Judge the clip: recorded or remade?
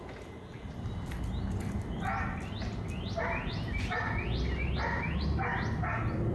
recorded